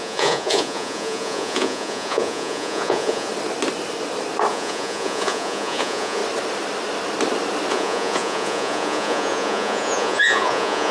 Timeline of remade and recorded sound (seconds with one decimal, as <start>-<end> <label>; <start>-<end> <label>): 0.0-3.3 remade; 3.3-4.5 recorded; 4.5-6.2 remade; 6.2-7.7 recorded; 7.7-10.9 remade